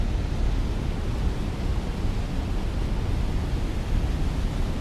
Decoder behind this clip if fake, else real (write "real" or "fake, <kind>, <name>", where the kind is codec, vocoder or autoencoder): real